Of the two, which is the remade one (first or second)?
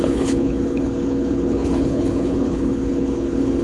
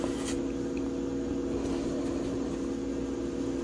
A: first